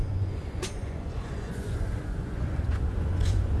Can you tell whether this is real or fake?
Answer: fake